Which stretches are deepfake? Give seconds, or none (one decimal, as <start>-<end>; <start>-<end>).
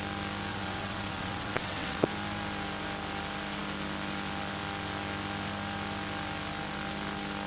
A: 0.5-2.1